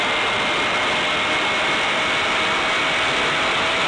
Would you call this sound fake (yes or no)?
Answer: no